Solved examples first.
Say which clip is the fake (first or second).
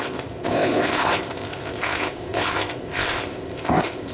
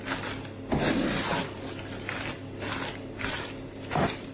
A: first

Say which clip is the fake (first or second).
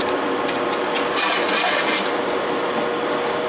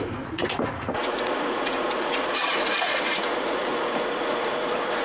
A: second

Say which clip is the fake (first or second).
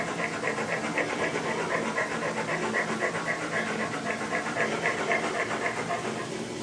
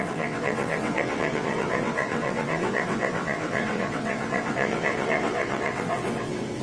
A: second